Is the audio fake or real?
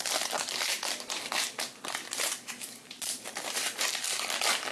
real